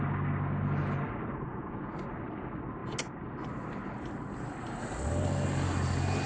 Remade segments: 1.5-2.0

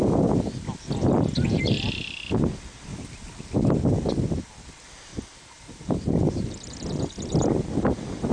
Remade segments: 5.1-8.3

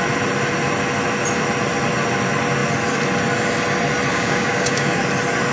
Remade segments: 4.1-5.0

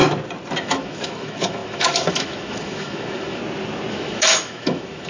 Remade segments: 0.6-3.4; 3.9-5.1